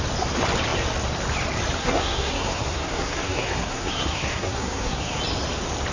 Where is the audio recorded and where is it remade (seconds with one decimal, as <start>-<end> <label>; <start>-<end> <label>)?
0.0-1.8 recorded; 1.8-5.2 remade; 5.2-5.9 recorded